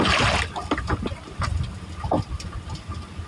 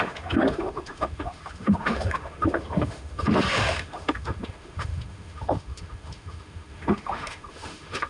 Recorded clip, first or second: first